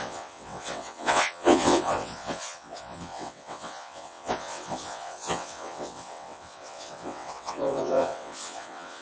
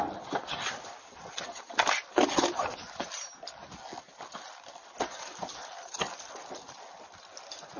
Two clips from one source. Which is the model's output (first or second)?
first